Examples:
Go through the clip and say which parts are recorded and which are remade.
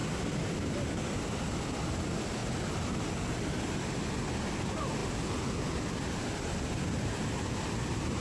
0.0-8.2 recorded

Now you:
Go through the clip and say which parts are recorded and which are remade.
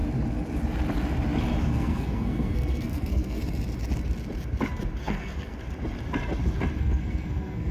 0.0-1.6 recorded; 1.6-3.4 remade; 3.4-5.0 recorded; 5.0-5.6 remade; 5.6-6.8 recorded; 6.8-7.7 remade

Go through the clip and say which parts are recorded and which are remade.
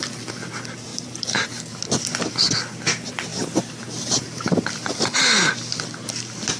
0.0-0.9 recorded; 0.9-1.8 remade; 1.8-3.3 recorded; 3.3-4.4 remade; 4.4-6.6 recorded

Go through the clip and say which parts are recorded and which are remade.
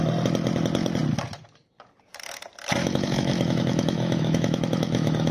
0.0-2.8 recorded; 2.8-5.3 remade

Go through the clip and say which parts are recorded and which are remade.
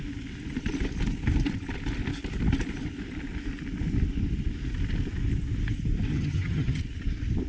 0.0-6.1 recorded; 6.1-6.8 remade; 6.8-7.5 recorded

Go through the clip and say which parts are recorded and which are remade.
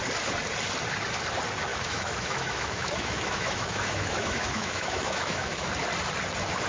0.0-1.7 recorded; 1.7-5.7 remade; 5.7-6.7 recorded